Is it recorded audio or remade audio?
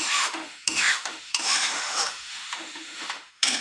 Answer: remade